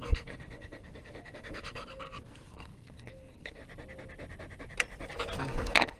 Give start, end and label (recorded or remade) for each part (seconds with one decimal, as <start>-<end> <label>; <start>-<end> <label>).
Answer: 0.0-3.6 remade; 3.6-5.4 recorded; 5.4-6.0 remade